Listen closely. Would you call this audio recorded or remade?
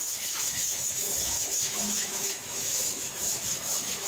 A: remade